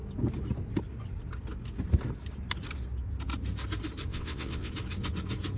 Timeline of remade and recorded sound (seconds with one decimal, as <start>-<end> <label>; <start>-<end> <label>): 0.0-4.1 recorded; 4.1-4.7 remade; 4.7-5.6 recorded